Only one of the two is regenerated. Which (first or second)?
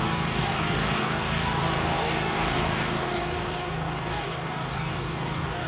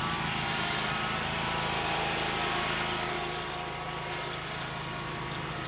first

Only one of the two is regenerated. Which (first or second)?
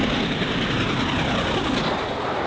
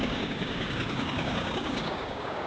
second